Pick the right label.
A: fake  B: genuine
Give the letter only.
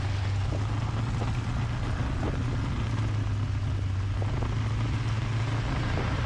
B